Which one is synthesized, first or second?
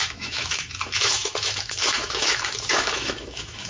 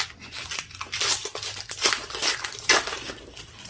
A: first